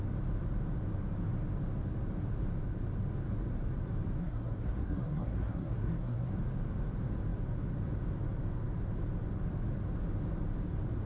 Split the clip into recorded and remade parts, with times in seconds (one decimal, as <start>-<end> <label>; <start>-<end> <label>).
0.0-4.2 recorded; 4.2-6.3 remade; 6.3-11.1 recorded